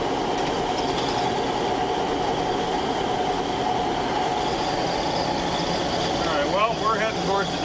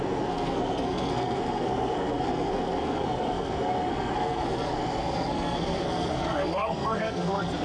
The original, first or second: first